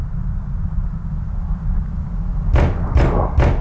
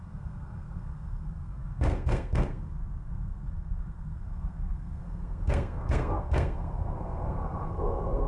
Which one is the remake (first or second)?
second